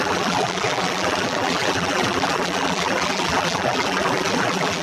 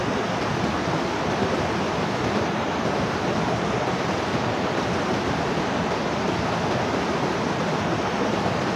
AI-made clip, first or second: first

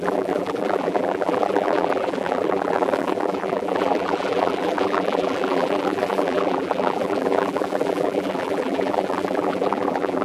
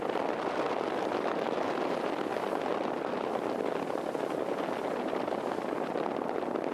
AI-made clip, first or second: first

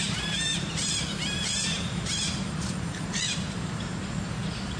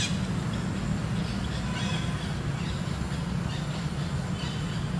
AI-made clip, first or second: first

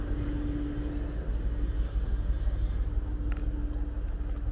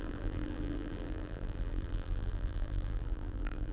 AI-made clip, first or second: second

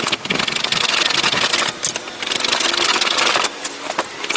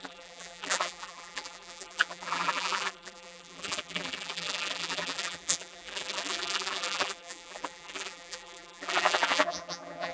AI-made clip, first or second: second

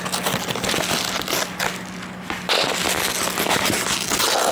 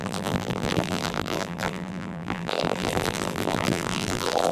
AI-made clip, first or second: second